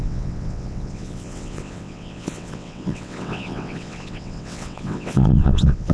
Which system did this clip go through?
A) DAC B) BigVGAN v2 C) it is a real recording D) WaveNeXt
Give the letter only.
D